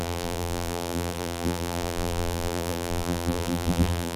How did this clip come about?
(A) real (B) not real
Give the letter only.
B